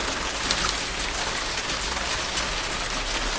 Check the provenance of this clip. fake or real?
real